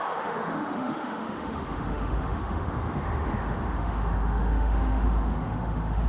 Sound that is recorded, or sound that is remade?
remade